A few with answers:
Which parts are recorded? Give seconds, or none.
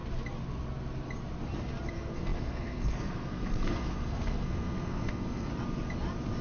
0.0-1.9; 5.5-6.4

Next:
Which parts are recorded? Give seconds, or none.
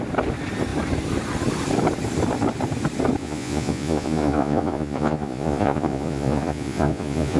0.0-3.2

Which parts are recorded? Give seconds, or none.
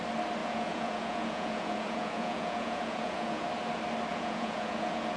0.0-0.4; 3.5-4.1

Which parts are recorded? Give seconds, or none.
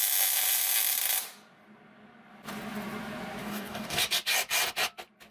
0.0-3.4; 4.0-5.3